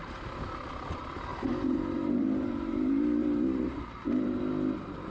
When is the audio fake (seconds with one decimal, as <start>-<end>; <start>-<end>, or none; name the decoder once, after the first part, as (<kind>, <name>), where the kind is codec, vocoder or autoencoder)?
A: 1.3-4.4 (vocoder, BigVGAN v2)